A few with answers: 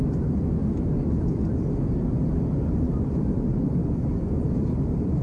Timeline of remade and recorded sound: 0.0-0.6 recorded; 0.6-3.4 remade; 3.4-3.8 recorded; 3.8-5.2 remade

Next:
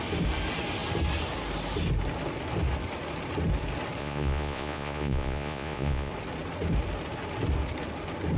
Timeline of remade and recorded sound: 0.0-4.0 recorded; 4.0-6.1 remade; 6.1-8.4 recorded

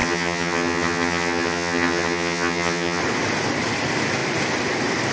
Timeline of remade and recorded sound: 0.0-3.0 remade; 3.0-5.1 recorded